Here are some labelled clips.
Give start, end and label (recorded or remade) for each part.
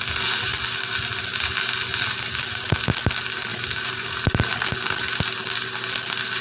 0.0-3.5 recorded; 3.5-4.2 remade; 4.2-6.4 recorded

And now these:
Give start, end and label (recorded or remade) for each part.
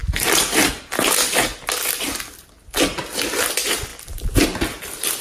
0.0-0.8 remade; 0.8-3.9 recorded; 3.9-5.2 remade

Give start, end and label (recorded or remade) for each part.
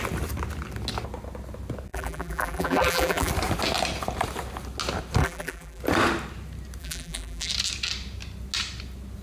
0.0-1.9 recorded; 1.9-3.3 remade; 3.3-5.2 recorded; 5.2-5.8 remade; 5.8-6.8 recorded; 6.8-7.5 remade; 7.5-9.2 recorded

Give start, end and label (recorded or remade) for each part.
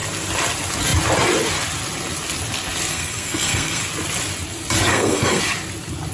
0.0-2.9 recorded; 2.9-3.8 remade; 3.8-4.9 recorded; 4.9-5.4 remade; 5.4-6.1 recorded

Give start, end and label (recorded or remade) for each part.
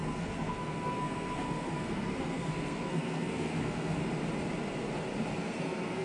0.0-4.0 remade; 4.0-5.4 recorded; 5.4-6.0 remade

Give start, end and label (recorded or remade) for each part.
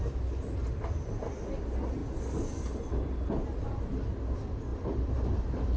0.0-5.8 recorded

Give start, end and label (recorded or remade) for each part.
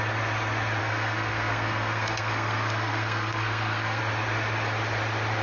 0.0-0.8 recorded; 0.8-4.0 remade; 4.0-5.4 recorded